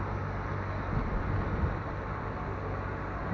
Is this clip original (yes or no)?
yes